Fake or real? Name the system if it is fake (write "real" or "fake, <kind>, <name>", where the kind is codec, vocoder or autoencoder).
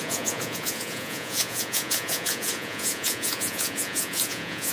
fake, vocoder, Vocos